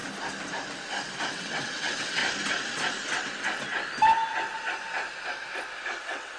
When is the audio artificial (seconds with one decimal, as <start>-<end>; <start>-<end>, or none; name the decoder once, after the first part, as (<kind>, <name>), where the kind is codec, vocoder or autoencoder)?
1.3-2.2 (vocoder, WaveNeXt); 6.0-6.4